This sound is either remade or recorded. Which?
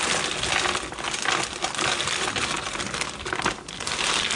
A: recorded